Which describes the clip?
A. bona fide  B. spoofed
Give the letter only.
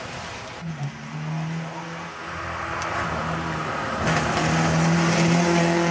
A